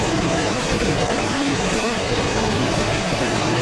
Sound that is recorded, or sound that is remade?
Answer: remade